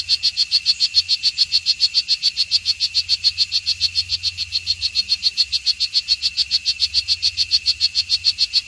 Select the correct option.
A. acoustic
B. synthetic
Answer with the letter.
A